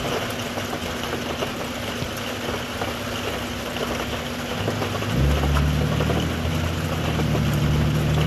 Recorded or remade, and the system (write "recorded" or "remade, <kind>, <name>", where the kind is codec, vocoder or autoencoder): recorded